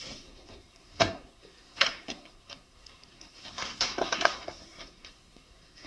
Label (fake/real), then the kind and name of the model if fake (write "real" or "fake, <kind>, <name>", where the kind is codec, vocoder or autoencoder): fake, codec, SNAC